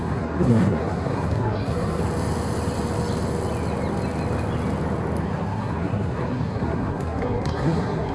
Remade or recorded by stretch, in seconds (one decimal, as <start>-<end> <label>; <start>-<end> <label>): 0.0-2.0 remade; 2.0-5.2 recorded; 5.2-8.1 remade